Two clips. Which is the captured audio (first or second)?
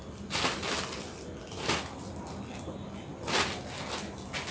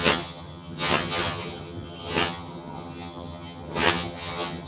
first